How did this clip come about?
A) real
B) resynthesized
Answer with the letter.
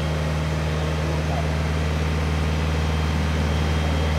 A